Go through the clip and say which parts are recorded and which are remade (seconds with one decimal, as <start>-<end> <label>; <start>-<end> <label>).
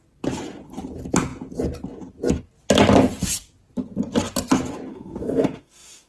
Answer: 0.0-4.9 recorded; 4.9-6.1 remade